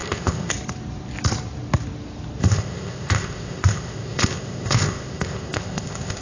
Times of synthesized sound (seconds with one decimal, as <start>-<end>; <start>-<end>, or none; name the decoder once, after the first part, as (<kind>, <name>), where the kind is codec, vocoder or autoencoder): 0.0-0.5 (codec, ZipCodec); 2.4-6.2